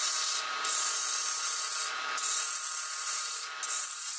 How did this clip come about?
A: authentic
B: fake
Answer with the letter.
B